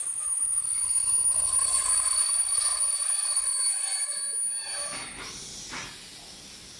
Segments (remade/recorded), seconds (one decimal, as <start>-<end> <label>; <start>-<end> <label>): 0.0-6.8 recorded